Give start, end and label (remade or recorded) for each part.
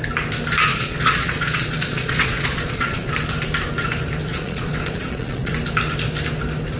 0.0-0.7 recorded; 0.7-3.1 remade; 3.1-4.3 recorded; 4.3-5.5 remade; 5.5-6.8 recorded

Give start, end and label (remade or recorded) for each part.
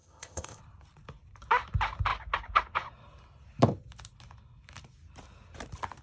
0.0-0.6 remade; 0.6-6.0 recorded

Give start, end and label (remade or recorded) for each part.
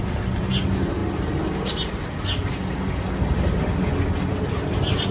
0.0-5.1 recorded